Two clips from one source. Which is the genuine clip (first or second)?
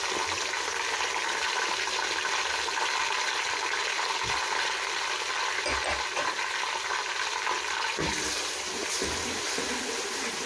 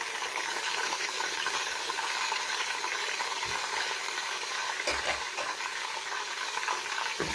first